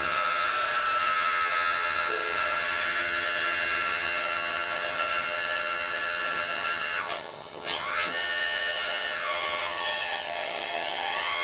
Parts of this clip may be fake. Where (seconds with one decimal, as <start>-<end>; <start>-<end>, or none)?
0.0-0.5; 1.0-11.4